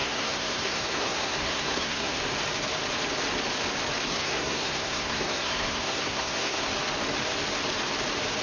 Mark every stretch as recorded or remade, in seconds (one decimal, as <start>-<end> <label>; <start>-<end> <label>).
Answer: 0.0-2.2 remade; 2.2-4.1 recorded; 4.1-6.7 remade; 6.7-8.4 recorded